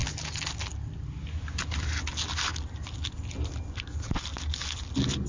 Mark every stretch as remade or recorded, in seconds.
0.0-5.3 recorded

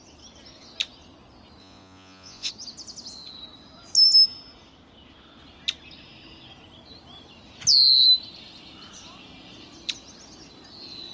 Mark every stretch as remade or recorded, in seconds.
0.0-1.6 recorded; 1.6-2.5 remade; 2.5-11.1 recorded

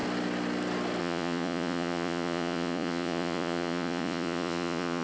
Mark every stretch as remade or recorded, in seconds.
0.0-1.0 recorded; 1.0-5.0 remade

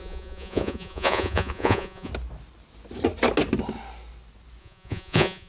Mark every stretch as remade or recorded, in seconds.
0.0-2.1 remade; 2.1-4.6 recorded; 4.6-5.5 remade

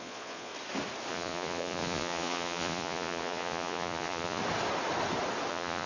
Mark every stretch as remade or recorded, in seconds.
0.0-0.5 remade; 0.5-1.1 recorded; 1.1-4.4 remade; 4.4-5.5 recorded; 5.5-5.9 remade